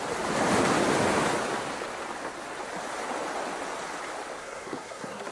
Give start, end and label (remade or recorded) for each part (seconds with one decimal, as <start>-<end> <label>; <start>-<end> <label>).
0.0-4.4 recorded; 4.4-5.3 remade